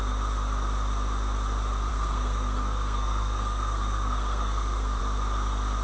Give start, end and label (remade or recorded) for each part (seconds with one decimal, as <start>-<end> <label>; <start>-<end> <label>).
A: 0.0-1.9 recorded; 1.9-5.0 remade; 5.0-5.8 recorded